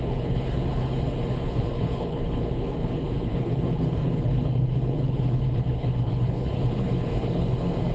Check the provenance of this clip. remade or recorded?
remade